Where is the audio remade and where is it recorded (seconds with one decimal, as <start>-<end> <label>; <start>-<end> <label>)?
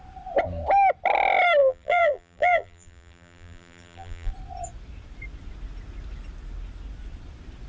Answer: 0.0-1.6 recorded; 1.6-4.3 remade; 4.3-7.7 recorded